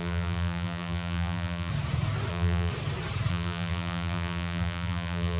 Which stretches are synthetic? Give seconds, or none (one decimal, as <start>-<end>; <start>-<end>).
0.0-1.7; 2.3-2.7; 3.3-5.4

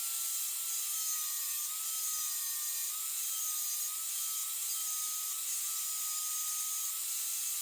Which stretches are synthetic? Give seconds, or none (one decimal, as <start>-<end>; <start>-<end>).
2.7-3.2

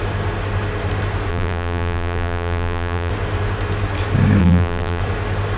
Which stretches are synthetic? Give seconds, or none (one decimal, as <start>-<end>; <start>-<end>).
1.3-3.1; 4.4-5.0